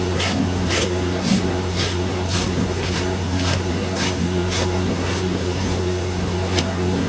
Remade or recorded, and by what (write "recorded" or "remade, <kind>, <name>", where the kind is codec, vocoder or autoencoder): remade, codec, SNAC